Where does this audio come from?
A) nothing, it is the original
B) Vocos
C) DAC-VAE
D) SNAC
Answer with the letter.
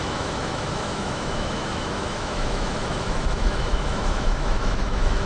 C